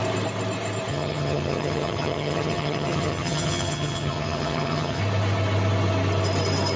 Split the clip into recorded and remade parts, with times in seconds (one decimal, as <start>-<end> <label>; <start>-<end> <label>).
0.0-0.9 recorded; 0.9-5.0 remade; 5.0-6.8 recorded